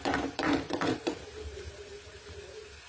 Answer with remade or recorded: remade